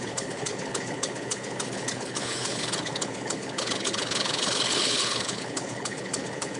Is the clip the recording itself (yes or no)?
no